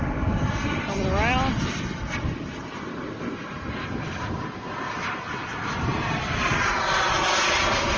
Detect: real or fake real